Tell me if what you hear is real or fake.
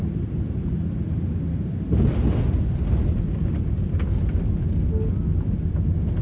real